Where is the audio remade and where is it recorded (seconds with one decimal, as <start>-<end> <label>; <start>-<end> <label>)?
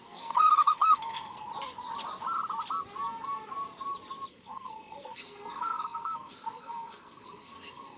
0.0-1.5 remade; 1.5-4.3 recorded; 4.3-8.0 remade